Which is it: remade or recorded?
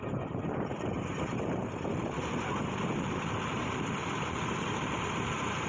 remade